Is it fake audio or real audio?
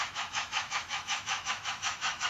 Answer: fake